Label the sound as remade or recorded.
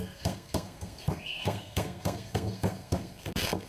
remade